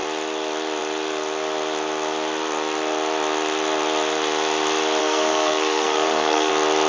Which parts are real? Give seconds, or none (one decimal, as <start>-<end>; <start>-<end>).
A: 0.0-5.0; 6.5-6.9